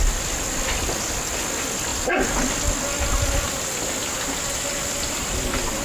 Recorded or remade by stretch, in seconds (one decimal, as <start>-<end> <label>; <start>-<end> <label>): 0.0-1.9 remade; 1.9-5.1 recorded; 5.1-5.8 remade